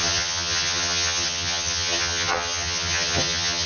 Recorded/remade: remade